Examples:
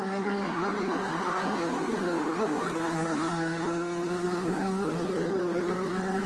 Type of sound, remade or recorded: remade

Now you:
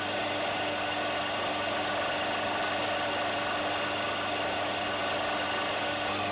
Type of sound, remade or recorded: recorded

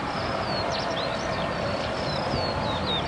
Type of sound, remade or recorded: recorded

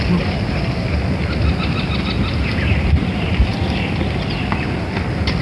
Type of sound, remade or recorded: recorded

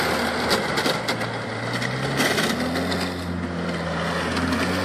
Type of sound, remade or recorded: recorded